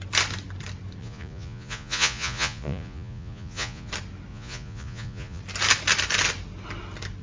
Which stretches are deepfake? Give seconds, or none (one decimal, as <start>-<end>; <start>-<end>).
1.0-3.9; 4.3-5.4